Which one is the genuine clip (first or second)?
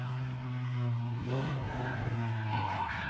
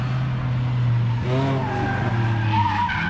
second